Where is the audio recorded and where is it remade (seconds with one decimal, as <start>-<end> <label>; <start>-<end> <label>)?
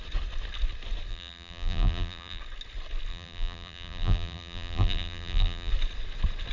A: 0.0-1.1 recorded; 1.1-2.4 remade; 2.4-3.1 recorded; 3.1-5.7 remade; 5.7-6.5 recorded